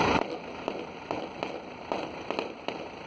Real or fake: fake